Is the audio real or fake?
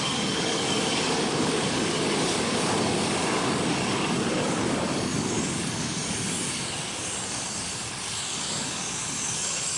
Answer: fake